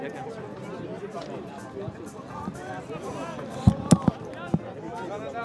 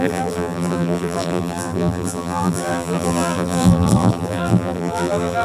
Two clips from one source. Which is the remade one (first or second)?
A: second